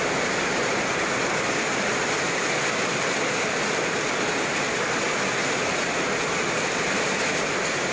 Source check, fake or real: real